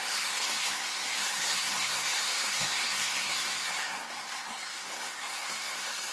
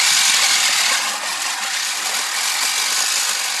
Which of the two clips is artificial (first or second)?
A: first